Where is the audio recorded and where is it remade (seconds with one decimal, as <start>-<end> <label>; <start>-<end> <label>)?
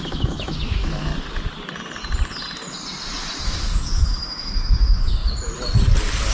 0.0-1.1 remade; 1.1-3.4 recorded; 3.4-5.2 remade; 5.2-6.3 recorded